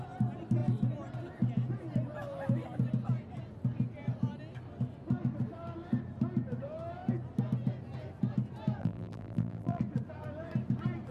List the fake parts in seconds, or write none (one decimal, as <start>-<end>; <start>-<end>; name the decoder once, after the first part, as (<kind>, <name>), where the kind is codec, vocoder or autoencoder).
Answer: 8.8-9.8 (vocoder, BigVGAN v2)